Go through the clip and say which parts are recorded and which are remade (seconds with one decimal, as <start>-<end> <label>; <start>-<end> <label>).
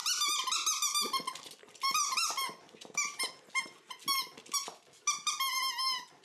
0.0-6.2 recorded